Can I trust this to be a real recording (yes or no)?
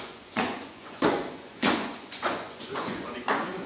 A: no